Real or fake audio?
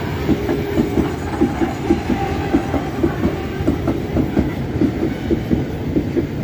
fake